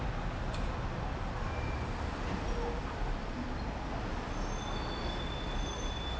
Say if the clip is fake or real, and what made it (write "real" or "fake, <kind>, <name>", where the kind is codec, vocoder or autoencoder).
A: real